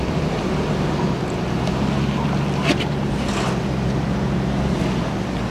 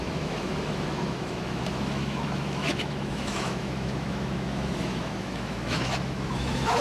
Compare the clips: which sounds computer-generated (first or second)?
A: second